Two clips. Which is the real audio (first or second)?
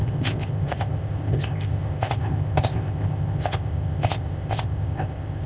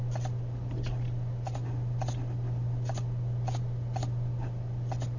second